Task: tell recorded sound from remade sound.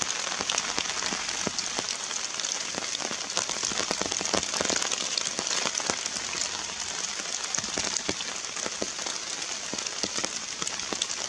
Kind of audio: recorded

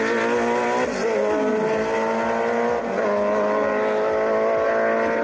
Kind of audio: recorded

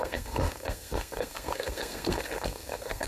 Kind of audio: remade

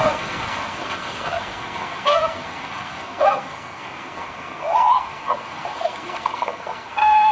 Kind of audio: remade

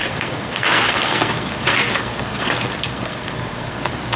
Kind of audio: remade